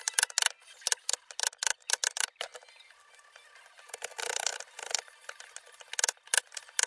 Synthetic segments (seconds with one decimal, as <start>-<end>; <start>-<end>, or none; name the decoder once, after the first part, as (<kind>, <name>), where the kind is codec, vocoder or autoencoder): none